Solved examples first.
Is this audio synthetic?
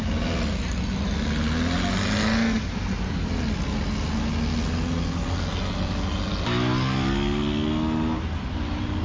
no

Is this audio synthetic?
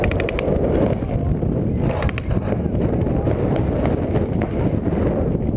no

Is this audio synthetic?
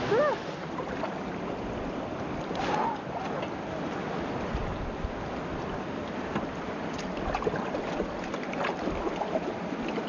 no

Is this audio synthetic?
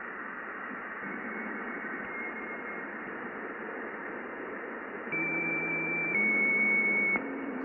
yes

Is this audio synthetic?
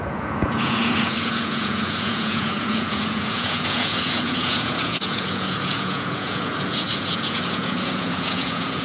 yes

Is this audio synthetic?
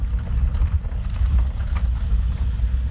no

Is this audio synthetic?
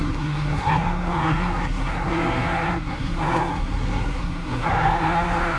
yes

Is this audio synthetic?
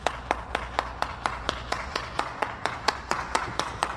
yes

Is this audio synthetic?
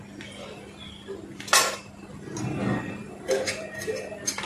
no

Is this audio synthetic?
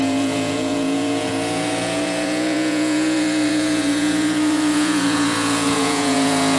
yes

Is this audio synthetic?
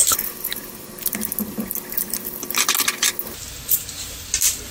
no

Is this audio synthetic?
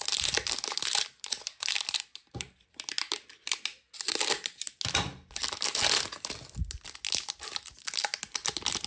no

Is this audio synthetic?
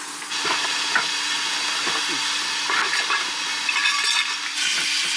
no